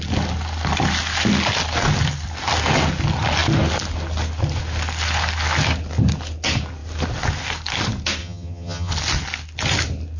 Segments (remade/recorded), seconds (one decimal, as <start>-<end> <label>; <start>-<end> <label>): 0.0-8.2 recorded; 8.2-8.9 remade; 8.9-10.2 recorded